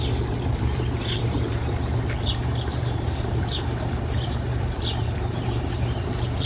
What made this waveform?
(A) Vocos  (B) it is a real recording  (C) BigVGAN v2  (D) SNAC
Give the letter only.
C